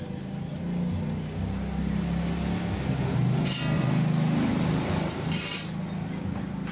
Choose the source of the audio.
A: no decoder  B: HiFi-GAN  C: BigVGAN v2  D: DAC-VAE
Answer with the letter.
A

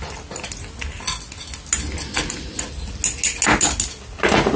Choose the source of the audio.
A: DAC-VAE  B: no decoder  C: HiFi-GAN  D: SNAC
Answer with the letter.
B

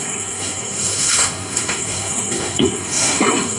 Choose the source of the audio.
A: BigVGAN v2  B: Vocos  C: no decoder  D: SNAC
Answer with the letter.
D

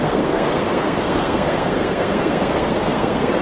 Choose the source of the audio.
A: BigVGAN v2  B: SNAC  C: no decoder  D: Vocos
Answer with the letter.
B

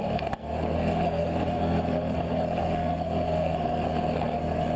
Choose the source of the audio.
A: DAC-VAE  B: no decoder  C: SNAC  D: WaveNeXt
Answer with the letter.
C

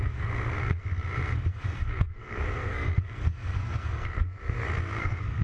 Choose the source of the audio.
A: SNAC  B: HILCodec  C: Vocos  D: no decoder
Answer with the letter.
A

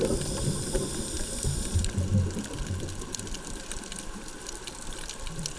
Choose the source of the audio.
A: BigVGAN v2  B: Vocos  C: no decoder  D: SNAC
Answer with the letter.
A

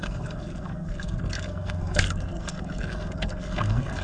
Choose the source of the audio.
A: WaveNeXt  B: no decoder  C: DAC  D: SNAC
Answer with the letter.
D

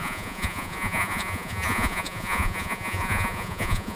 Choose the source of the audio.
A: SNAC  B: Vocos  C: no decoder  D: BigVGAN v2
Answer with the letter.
B